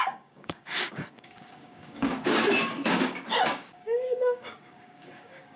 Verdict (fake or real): fake